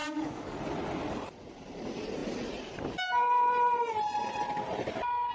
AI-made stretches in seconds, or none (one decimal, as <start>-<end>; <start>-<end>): 0.0-0.6